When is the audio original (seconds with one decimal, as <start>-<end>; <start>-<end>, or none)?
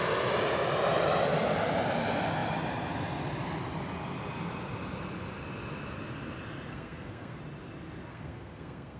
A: 0.0-6.7; 7.4-8.1